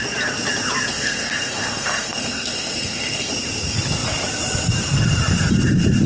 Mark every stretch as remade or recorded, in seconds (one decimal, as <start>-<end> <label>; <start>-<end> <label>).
0.0-0.9 recorded; 0.9-3.3 remade; 3.3-6.1 recorded